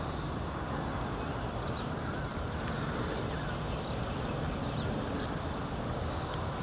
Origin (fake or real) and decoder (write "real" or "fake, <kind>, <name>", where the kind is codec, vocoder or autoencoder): real